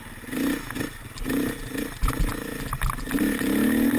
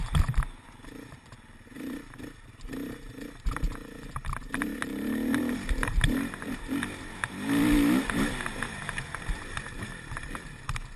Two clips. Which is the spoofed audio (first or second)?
second